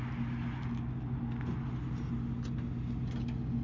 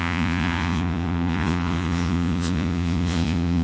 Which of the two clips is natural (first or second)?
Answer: first